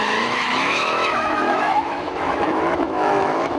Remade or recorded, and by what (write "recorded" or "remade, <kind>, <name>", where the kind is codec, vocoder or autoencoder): remade, autoencoder, DAC-VAE